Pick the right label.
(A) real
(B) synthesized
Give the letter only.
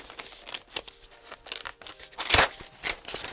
A